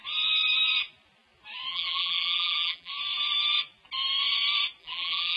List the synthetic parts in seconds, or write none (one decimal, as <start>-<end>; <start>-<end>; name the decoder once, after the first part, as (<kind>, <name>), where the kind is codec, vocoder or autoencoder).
1.7-2.9 (vocoder, BigVGAN v2); 4.8-5.4